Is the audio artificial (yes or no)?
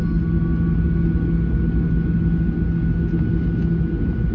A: no